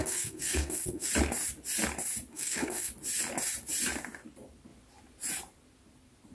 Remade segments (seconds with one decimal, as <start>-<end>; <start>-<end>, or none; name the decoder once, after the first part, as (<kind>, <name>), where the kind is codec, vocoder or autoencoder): 0.0-1.1 (codec, SNAC); 2.3-2.9